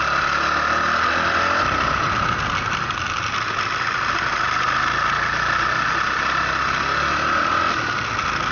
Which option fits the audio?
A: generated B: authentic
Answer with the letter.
B